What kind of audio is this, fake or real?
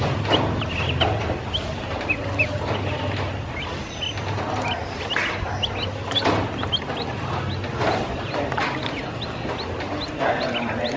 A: real